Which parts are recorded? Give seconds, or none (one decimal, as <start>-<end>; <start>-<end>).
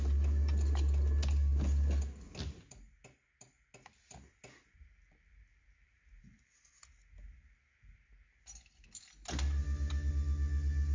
0.0-10.9